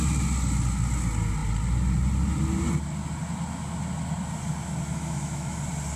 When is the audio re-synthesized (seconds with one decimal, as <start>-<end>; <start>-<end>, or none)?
4.9-5.6